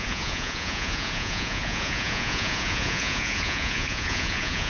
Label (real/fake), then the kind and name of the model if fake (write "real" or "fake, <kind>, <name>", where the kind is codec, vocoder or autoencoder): fake, vocoder, Vocos